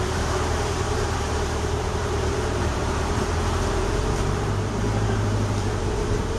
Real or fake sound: fake